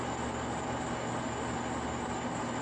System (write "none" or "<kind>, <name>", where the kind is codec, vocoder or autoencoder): none